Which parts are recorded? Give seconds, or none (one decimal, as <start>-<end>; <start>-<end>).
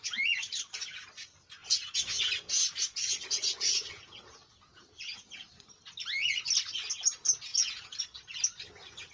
0.0-1.6; 5.5-7.5; 8.0-9.1